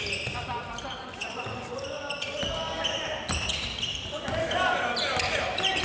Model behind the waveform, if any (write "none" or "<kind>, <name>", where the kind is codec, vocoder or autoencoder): none